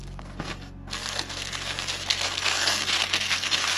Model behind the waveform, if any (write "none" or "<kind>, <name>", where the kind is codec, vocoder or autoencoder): codec, SNAC